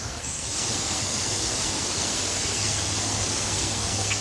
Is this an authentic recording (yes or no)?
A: no